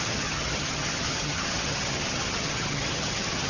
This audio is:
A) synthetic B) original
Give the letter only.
A